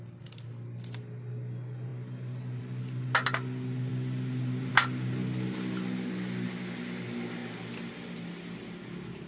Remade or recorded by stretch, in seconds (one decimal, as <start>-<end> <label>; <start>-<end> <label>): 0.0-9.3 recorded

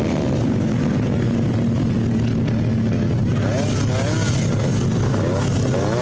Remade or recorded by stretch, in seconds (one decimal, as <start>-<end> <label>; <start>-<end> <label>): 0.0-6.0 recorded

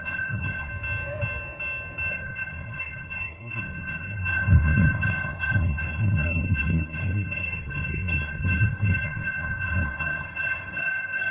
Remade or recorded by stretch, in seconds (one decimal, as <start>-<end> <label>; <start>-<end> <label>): 0.0-0.7 remade; 0.7-2.1 recorded; 2.1-11.3 remade

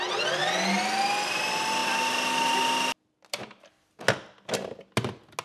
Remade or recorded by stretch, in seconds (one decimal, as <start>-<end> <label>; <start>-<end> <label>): 0.0-5.4 recorded

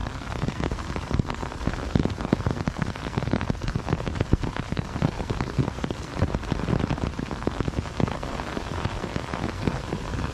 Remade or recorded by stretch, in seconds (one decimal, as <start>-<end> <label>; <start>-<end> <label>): 0.0-6.1 remade; 6.1-7.2 recorded; 7.2-10.3 remade

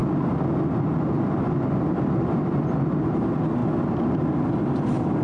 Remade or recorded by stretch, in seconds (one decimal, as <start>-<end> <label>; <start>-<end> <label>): 0.0-5.2 recorded

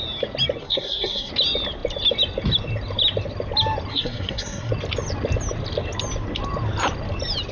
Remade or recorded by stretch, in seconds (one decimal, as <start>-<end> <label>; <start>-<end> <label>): 0.0-0.6 recorded; 0.6-1.3 remade; 1.3-3.9 recorded; 3.9-4.7 remade; 4.7-7.5 recorded

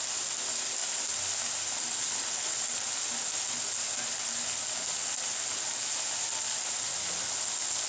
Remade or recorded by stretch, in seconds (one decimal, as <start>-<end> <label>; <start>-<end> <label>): 0.0-7.9 recorded